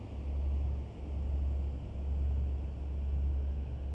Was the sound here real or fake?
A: real